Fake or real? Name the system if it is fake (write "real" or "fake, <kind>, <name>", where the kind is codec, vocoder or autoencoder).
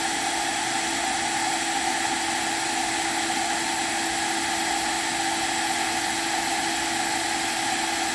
real